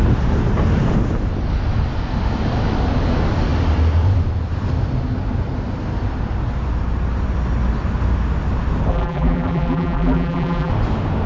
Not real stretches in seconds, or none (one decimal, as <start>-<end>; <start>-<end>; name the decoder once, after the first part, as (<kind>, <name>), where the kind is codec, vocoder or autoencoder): 8.9-10.7 (vocoder, BigVGAN v2)